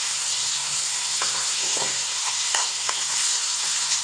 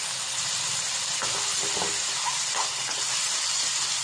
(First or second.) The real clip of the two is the second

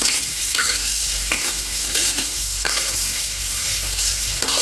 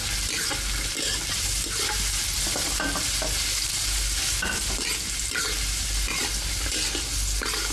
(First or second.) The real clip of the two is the second